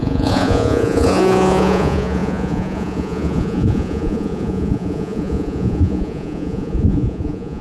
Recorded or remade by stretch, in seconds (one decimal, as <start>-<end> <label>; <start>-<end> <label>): 0.0-7.6 remade